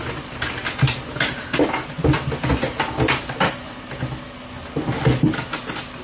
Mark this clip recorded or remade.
recorded